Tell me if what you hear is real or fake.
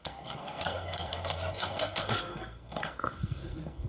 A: fake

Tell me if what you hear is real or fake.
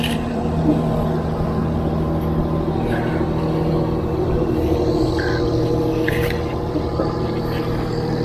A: real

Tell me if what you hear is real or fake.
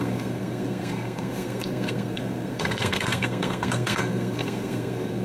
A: fake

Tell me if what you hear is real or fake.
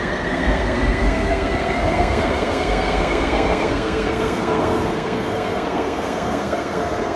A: fake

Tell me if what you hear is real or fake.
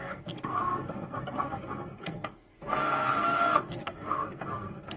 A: fake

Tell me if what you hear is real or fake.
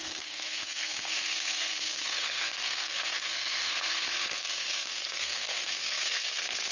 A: fake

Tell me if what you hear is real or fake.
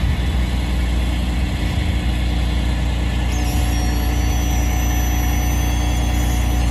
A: real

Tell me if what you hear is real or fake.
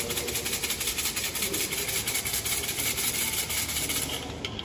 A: real